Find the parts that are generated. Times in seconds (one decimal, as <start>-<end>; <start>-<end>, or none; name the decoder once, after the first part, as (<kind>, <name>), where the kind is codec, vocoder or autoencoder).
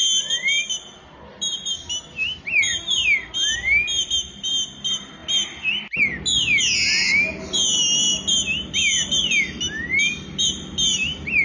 none